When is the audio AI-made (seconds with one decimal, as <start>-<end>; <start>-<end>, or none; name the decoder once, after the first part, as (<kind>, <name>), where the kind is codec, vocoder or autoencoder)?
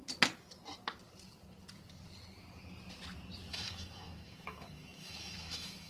3.5-5.9 (autoencoder, DAC-VAE)